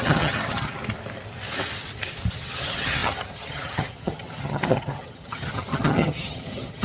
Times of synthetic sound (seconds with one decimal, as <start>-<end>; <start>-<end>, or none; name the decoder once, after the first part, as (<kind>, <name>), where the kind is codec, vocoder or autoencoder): 0.0-0.7 (vocoder, HiFi-GAN); 2.3-6.8